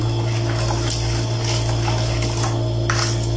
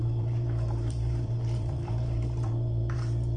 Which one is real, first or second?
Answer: first